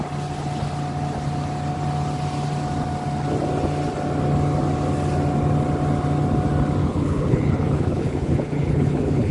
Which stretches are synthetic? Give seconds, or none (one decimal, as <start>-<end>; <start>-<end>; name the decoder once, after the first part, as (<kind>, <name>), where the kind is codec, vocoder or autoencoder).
6.8-9.3 (codec, HILCodec)

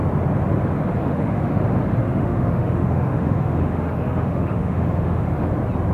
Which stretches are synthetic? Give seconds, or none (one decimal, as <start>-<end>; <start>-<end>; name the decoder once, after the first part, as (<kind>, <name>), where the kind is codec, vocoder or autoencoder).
1.0-1.6 (autoencoder, DAC-VAE); 2.0-5.5

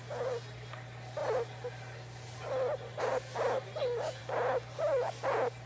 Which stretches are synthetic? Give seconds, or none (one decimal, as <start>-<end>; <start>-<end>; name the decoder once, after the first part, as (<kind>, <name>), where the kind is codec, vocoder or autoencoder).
none

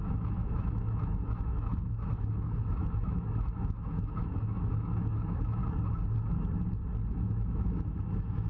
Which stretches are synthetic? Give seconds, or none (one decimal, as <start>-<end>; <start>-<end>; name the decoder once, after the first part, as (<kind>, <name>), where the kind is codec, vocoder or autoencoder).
0.0-5.6 (autoencoder, DAC-VAE); 7.1-8.5

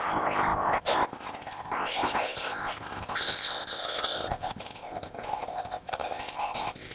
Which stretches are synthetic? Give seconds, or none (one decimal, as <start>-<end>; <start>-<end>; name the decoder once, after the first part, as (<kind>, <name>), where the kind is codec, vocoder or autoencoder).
0.0-6.9 (codec, ZipCodec)